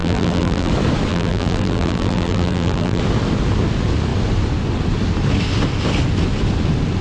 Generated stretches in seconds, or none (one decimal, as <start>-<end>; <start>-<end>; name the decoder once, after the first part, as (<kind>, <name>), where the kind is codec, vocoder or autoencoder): 0.0-0.7 (vocoder, BigVGAN v2); 1.1-3.0